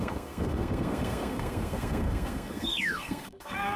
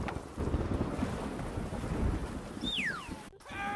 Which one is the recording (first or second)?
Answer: second